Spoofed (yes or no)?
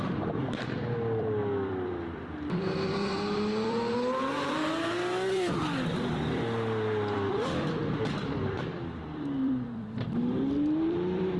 yes